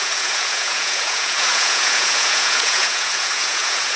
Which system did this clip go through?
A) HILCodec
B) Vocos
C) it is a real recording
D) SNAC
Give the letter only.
B